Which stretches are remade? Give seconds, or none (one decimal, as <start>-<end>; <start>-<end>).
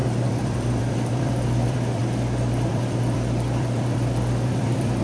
0.0-2.0; 2.7-5.0